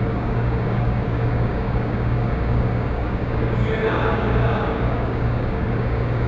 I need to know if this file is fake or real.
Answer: fake